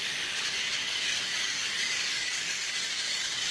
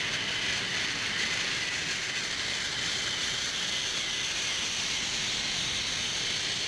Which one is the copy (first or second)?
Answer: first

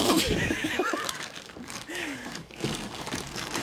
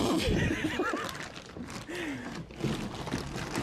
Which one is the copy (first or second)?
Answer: first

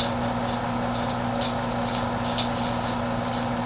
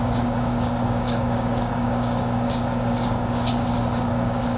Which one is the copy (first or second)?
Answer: second